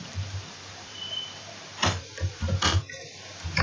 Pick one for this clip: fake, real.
fake